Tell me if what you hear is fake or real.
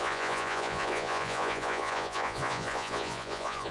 fake